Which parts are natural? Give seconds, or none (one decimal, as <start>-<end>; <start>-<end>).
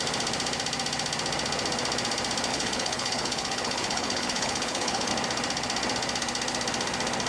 0.0-2.5; 5.1-7.3